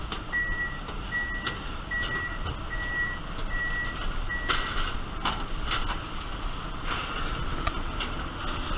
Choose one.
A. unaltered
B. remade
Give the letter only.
A